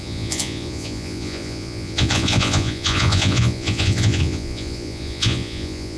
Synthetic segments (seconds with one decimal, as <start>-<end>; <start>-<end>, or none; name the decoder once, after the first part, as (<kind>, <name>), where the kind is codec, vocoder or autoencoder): 0.0-6.0 (vocoder, Vocos)

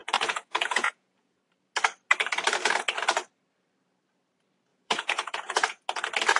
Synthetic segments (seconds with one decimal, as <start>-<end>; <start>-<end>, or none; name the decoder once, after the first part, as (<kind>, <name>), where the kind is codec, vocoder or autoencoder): 0.0-1.4 (vocoder, Vocos); 4.7-5.8

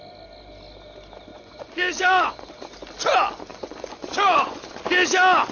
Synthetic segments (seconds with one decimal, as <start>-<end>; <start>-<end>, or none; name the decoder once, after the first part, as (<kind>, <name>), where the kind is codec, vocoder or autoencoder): 1.3-2.5 (vocoder, Vocos); 3.5-4.7

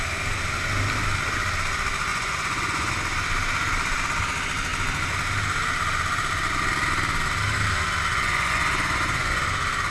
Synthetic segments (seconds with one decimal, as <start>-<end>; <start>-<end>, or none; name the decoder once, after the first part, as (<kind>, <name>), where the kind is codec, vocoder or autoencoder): 2.1-2.9 (vocoder, Vocos); 8.1-9.4